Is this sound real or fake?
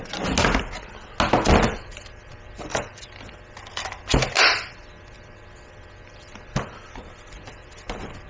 real